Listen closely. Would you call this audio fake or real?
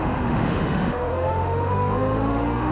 fake